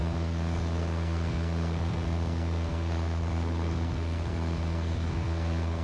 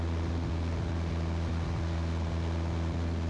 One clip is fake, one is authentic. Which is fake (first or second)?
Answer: first